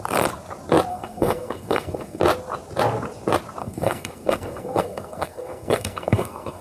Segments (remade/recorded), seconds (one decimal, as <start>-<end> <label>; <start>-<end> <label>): 0.0-0.9 recorded; 0.9-2.2 remade; 2.2-3.6 recorded; 3.6-6.6 remade